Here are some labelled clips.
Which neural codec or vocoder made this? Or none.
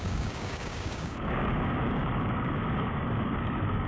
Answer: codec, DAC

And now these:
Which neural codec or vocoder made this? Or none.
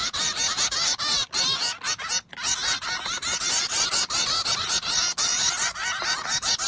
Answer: none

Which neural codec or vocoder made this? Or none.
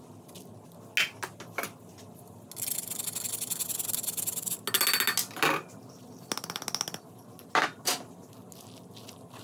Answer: none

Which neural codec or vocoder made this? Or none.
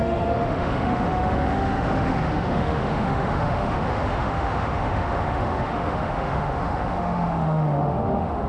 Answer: autoencoder, DAC-VAE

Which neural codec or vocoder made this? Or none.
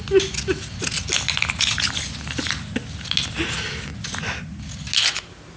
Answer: none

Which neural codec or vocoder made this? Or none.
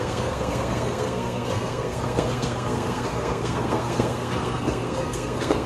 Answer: codec, SNAC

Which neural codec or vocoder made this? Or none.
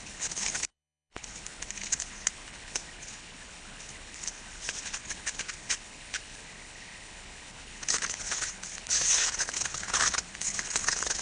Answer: codec, HILCodec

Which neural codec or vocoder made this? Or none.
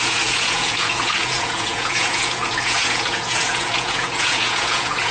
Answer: vocoder, Vocos